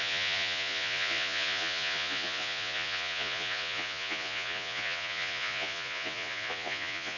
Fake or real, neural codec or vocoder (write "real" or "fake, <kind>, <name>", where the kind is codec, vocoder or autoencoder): fake, vocoder, Vocos